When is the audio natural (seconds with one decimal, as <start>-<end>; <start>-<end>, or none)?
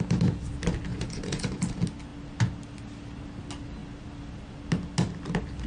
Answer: 0.0-0.9; 1.6-5.7